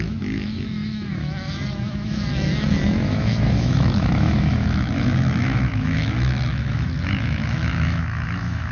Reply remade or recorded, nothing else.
remade